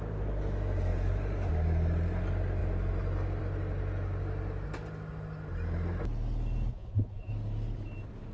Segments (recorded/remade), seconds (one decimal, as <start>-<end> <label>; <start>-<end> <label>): 0.0-6.7 recorded; 6.7-7.3 remade; 7.3-8.3 recorded